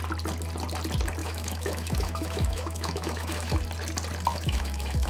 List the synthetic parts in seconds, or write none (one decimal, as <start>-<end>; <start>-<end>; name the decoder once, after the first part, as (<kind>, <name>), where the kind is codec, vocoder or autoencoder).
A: 1.2-3.6 (autoencoder, DAC-VAE); 4.3-5.1